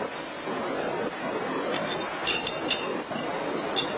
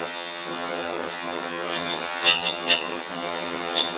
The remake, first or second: second